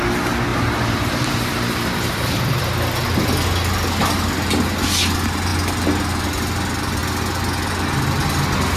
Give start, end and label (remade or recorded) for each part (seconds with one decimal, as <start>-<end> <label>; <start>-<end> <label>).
0.0-0.5 recorded; 0.5-2.6 remade; 2.6-8.8 recorded